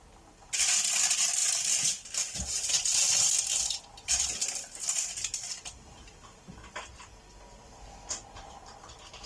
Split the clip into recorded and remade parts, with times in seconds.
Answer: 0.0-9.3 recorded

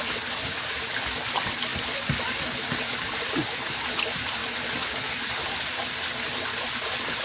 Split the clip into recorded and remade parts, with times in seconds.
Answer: 0.0-7.2 recorded

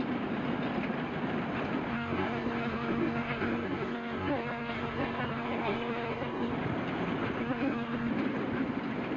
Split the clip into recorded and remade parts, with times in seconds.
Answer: 0.0-1.9 recorded; 1.9-6.5 remade; 6.5-7.4 recorded; 7.4-8.1 remade; 8.1-9.2 recorded

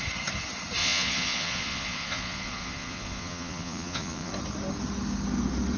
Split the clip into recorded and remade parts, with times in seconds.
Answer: 0.0-0.8 recorded; 0.8-4.3 remade; 4.3-5.8 recorded

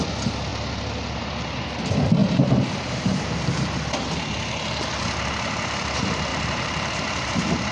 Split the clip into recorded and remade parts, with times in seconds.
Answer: 0.0-2.2 recorded; 2.2-3.5 remade; 3.5-6.3 recorded; 6.3-6.9 remade; 6.9-7.7 recorded

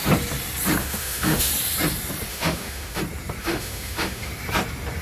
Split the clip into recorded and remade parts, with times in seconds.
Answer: 0.0-0.8 recorded; 0.8-1.5 remade; 1.5-2.3 recorded; 2.3-3.0 remade; 3.0-3.4 recorded; 3.4-4.3 remade; 4.3-5.0 recorded

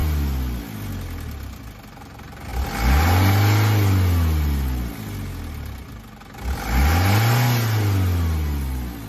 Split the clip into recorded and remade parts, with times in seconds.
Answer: 0.0-9.1 recorded